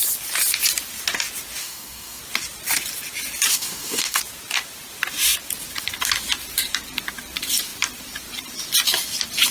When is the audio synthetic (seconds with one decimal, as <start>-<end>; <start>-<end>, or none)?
1.6-2.2; 3.5-4.2